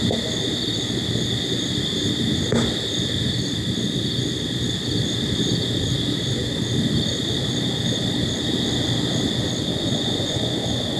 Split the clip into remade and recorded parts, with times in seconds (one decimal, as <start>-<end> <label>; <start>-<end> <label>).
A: 0.0-9.7 recorded; 9.7-10.6 remade; 10.6-11.0 recorded